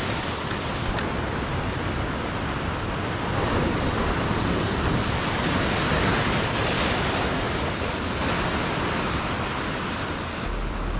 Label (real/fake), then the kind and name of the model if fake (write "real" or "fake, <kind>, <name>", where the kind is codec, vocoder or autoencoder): real